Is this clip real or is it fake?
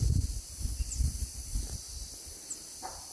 real